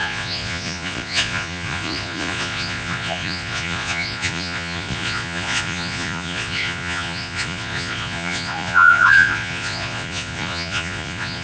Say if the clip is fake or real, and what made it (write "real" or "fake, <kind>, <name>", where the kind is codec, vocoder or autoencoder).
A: fake, vocoder, Vocos